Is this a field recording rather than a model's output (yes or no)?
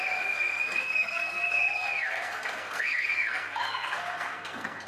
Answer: no